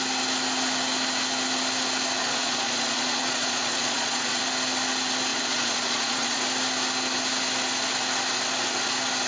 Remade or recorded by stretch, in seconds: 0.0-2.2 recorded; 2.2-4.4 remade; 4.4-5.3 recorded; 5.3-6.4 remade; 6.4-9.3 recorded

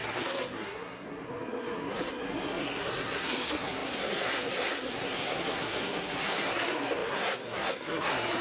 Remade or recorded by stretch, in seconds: 0.0-8.4 remade